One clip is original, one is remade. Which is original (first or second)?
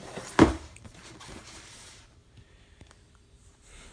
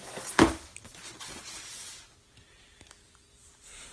second